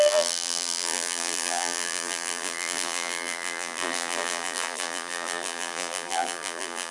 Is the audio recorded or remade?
remade